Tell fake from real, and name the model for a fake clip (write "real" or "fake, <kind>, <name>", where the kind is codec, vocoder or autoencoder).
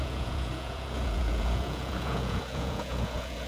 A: fake, vocoder, Vocos